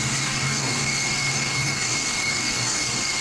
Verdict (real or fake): fake